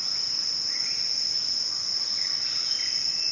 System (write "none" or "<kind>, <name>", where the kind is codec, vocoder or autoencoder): none